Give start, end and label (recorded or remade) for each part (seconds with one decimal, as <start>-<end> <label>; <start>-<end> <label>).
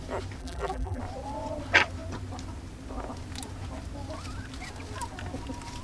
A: 0.0-0.4 recorded; 0.4-1.0 remade; 1.0-5.8 recorded